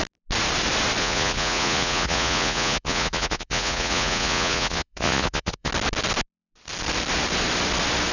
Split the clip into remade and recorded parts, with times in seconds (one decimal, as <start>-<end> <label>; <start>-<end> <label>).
0.0-1.0 recorded; 1.0-5.7 remade; 5.7-8.1 recorded